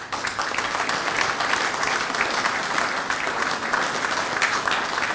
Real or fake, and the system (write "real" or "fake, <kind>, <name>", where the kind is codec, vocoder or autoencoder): real